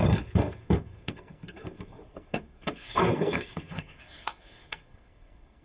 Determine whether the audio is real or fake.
fake